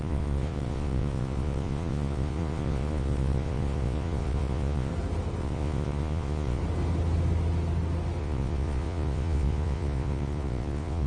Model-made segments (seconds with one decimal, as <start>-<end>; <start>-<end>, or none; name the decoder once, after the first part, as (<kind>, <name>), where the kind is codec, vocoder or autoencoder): 0.0-4.9 (vocoder, Vocos); 5.4-6.6; 8.2-11.1